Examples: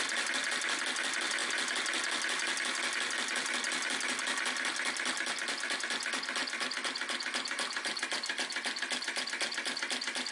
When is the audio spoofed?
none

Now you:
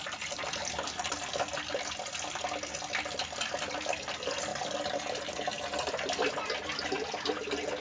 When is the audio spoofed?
none

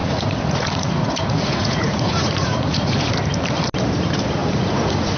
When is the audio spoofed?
0.0-3.1 (vocoder, Vocos); 4.4-5.2

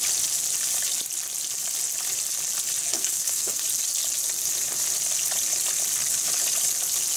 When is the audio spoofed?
2.8-3.6 (codec, SNAC)